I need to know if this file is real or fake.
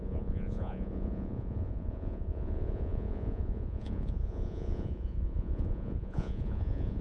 fake